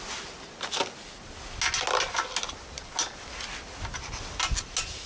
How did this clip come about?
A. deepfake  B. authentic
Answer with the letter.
B